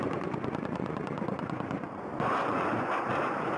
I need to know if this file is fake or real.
fake